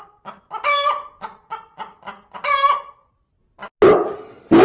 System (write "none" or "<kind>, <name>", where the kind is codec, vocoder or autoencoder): none